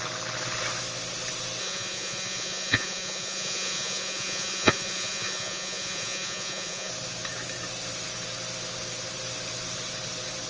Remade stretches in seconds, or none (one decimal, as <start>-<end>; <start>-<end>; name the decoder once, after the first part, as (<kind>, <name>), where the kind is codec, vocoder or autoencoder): 1.6-6.9 (vocoder, Vocos)